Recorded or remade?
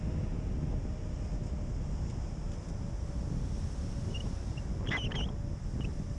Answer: recorded